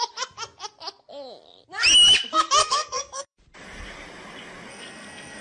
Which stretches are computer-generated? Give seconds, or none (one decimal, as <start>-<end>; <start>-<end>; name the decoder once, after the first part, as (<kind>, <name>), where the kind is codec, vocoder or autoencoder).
2.6-3.4 (codec, SNAC); 4.7-5.4